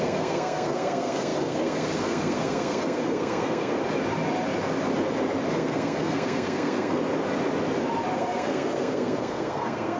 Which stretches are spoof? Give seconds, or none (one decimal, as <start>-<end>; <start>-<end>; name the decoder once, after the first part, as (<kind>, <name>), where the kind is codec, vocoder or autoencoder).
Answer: 0.0-3.8 (codec, SNAC); 5.5-7.0; 8.1-10.0